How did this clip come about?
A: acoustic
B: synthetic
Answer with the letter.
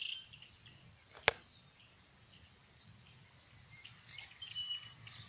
A